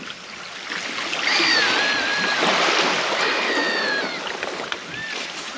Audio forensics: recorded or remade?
recorded